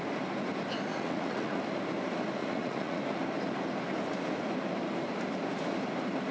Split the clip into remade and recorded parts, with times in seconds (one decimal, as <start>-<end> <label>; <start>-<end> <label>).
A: 0.0-0.9 recorded; 0.9-1.6 remade; 1.6-2.4 recorded; 2.4-3.0 remade; 3.0-6.3 recorded